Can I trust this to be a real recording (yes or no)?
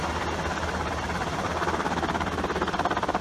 yes